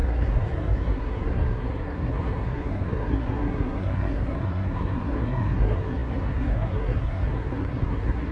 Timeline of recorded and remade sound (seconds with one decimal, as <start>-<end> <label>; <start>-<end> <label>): 0.0-8.3 remade